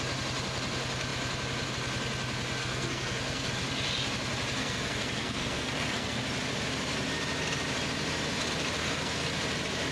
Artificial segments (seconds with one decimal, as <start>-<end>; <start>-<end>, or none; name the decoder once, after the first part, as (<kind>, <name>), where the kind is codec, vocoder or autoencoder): 2.6-3.5 (codec, SNAC); 4.5-6.2; 8.8-9.3